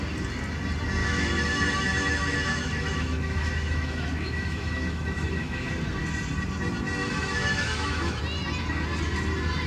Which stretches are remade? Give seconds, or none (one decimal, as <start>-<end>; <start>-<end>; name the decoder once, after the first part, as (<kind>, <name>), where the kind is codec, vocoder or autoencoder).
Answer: 1.0-5.7 (autoencoder, DAC-VAE); 7.0-8.2